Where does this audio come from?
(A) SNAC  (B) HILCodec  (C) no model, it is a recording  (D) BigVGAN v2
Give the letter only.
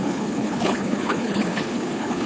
B